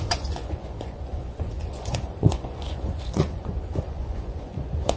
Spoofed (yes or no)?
yes